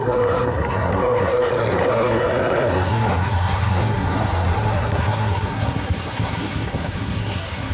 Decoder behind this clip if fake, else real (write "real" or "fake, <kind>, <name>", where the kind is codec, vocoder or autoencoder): fake, codec, SNAC